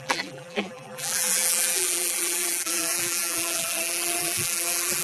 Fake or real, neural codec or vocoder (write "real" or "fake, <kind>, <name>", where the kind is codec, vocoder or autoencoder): fake, vocoder, BigVGAN v2